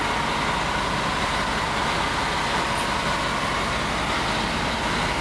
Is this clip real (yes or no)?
yes